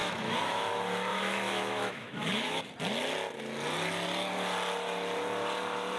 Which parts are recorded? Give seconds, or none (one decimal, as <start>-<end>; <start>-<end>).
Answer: 0.7-1.1; 2.6-6.0